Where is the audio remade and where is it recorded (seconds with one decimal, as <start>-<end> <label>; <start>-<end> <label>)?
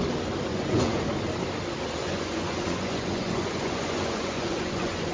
0.0-0.5 recorded; 0.5-1.0 remade; 1.0-2.0 recorded; 2.0-5.1 remade